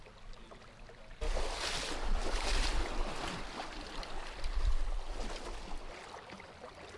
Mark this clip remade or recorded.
recorded